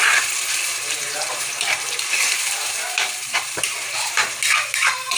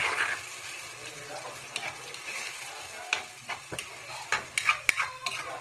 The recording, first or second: second